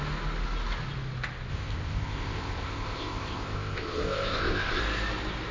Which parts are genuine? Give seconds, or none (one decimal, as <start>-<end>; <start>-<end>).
0.0-1.5; 4.8-5.5